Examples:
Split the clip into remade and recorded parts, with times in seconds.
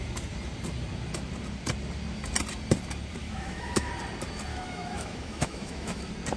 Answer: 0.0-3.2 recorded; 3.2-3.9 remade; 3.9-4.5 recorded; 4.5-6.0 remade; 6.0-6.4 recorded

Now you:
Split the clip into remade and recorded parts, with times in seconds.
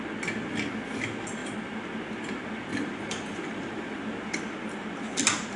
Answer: 0.0-2.7 recorded; 2.7-4.0 remade; 4.0-5.6 recorded